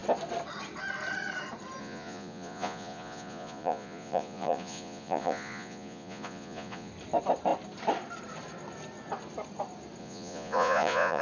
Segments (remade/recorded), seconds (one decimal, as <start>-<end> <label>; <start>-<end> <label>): 0.0-1.8 recorded; 1.8-6.9 remade; 6.9-10.0 recorded; 10.0-11.2 remade